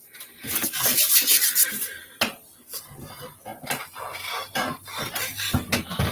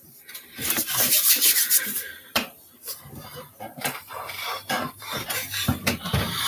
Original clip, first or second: first